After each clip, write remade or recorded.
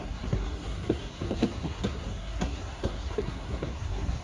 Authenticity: remade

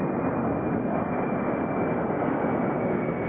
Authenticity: recorded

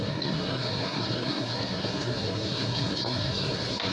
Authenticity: remade